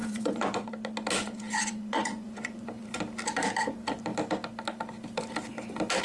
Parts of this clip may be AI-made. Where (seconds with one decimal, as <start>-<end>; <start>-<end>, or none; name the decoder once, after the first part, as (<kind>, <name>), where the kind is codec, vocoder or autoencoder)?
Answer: 0.0-0.7 (vocoder, Vocos); 1.2-3.0